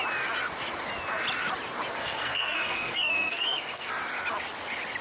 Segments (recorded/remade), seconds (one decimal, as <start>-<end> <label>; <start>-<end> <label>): 0.0-2.0 recorded; 2.0-3.9 remade; 3.9-5.0 recorded